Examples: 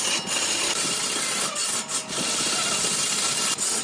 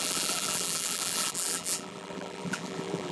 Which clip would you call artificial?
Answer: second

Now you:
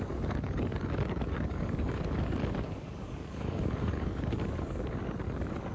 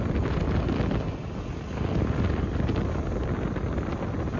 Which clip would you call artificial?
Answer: first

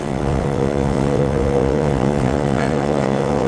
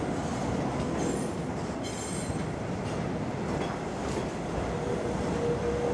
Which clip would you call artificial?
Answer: first